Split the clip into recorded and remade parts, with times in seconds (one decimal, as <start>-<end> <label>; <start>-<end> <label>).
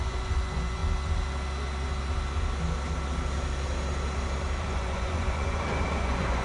0.0-0.8 remade; 0.8-4.6 recorded; 4.6-6.4 remade